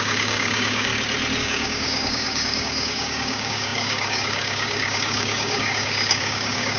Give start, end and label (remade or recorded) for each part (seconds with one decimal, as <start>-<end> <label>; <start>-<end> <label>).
0.0-0.9 remade; 0.9-1.4 recorded; 1.4-6.8 remade